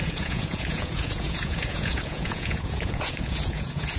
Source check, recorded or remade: remade